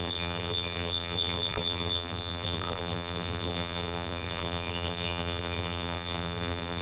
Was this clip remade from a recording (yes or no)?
yes